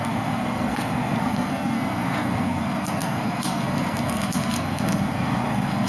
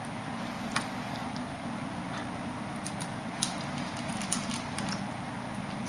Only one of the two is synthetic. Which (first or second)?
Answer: first